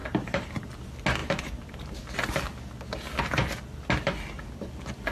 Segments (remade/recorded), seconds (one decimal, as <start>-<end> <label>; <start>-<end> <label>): 0.0-0.7 remade; 0.7-5.1 recorded